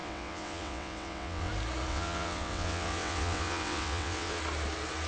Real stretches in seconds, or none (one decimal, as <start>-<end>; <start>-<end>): 1.5-1.9; 4.4-5.1